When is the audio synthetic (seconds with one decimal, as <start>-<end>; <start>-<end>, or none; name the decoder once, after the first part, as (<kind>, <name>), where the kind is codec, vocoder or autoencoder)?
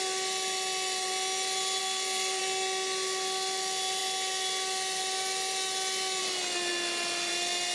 1.8-2.4 (codec, SNAC)